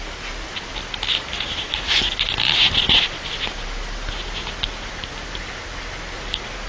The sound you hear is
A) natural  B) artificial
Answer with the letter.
A